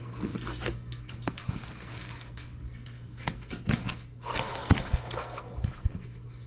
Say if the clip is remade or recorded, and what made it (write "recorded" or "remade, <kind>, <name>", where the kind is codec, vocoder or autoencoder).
remade, codec, SNAC